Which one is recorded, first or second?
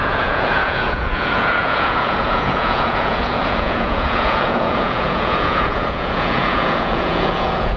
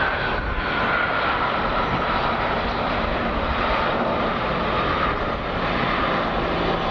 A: second